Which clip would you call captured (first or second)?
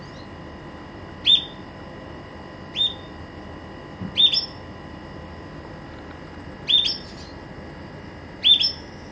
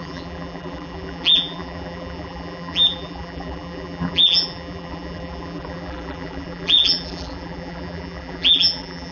first